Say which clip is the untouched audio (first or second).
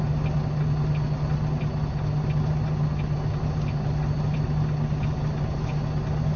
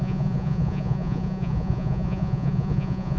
first